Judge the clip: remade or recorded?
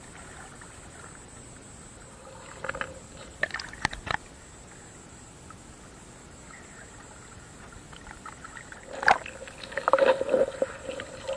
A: recorded